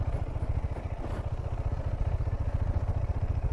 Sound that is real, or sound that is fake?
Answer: real